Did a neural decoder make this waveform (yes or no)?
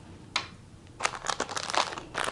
no